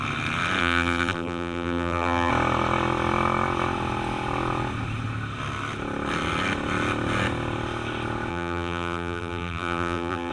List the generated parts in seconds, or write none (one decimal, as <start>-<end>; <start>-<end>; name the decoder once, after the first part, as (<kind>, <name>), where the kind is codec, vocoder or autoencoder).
0.6-2.3 (vocoder, BigVGAN v2); 8.3-10.3

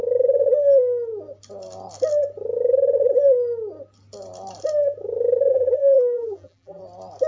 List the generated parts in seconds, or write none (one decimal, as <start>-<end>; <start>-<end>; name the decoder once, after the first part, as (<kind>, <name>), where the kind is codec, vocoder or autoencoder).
5.5-6.8 (vocoder, BigVGAN v2)